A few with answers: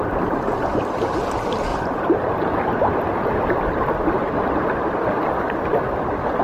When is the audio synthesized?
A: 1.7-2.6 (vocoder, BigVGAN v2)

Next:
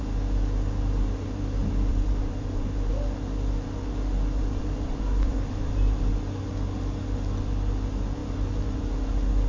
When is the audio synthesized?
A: 1.9-2.9 (vocoder, BigVGAN v2); 4.4-6.1

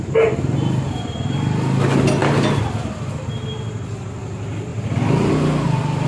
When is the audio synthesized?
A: none

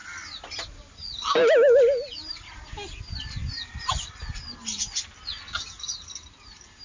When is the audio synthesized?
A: none

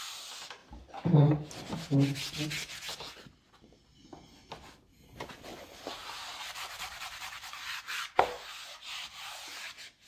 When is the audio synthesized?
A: 0.6-1.3 (vocoder, BigVGAN v2); 5.5-8.2

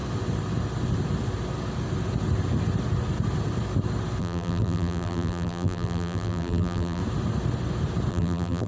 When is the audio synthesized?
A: 4.2-7.0 (vocoder, BigVGAN v2); 8.1-8.7

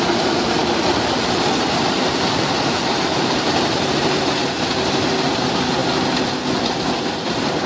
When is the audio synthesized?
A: 0.0-4.4 (vocoder, BigVGAN v2); 4.9-5.8; 7.1-7.7

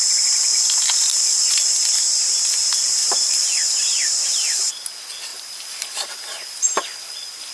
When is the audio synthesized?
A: 3.0-4.7 (vocoder, BigVGAN v2); 5.3-6.1